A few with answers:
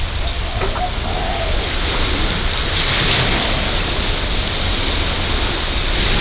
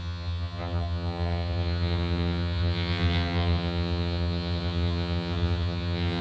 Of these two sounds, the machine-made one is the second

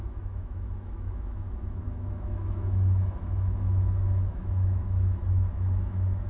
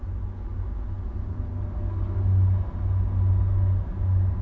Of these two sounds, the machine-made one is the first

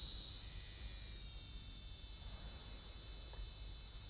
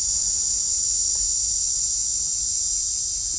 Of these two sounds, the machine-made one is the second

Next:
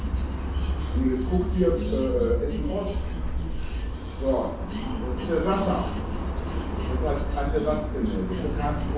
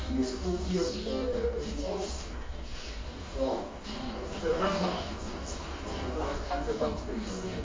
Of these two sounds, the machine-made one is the second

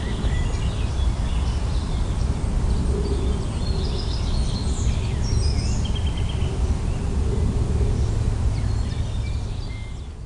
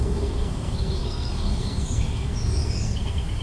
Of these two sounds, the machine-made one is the second